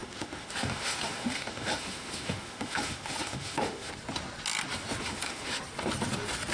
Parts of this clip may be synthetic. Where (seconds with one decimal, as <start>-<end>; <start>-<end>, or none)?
0.0-3.9; 5.0-5.6